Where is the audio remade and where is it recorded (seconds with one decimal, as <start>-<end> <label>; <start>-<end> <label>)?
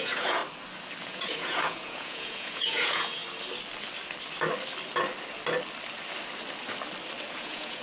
0.0-0.4 remade; 0.4-1.0 recorded; 1.0-3.2 remade; 3.2-7.3 recorded; 7.3-7.8 remade